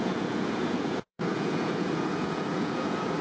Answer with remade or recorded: remade